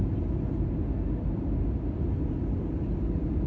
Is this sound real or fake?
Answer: real